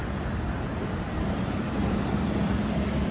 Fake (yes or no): no